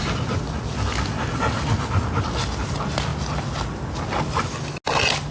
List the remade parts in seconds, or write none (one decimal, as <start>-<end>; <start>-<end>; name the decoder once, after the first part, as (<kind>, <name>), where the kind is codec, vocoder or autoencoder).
none